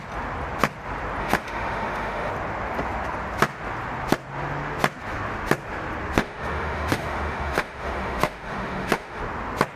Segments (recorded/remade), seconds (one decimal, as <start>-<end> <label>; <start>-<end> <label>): 0.0-1.2 recorded; 1.2-2.3 remade; 2.3-6.2 recorded; 6.2-9.2 remade; 9.2-9.8 recorded